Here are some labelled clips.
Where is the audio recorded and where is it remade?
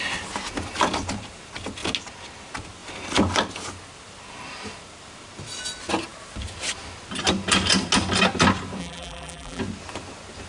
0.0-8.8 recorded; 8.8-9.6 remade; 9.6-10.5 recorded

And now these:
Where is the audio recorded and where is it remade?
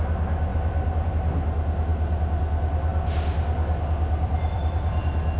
0.0-0.5 recorded; 0.5-1.1 remade; 1.1-2.9 recorded; 2.9-5.0 remade; 5.0-5.4 recorded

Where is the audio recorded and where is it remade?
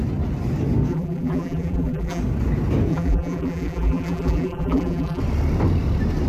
0.0-0.9 recorded; 0.9-2.2 remade; 2.2-2.9 recorded; 2.9-5.2 remade; 5.2-6.3 recorded